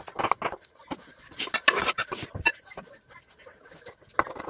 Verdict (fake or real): real